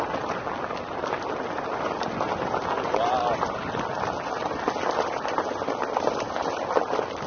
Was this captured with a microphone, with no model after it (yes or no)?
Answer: yes